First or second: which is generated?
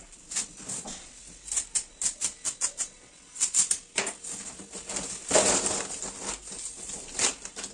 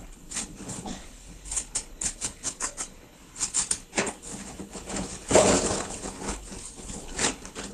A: second